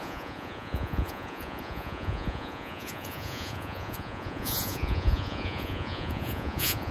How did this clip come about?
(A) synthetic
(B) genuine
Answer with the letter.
A